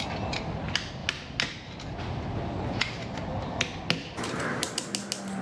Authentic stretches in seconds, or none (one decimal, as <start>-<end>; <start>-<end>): 0.0-5.4